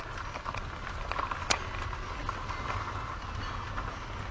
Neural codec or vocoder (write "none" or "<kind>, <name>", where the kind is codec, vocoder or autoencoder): none